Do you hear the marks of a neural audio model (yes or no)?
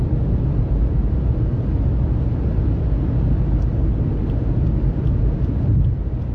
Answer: no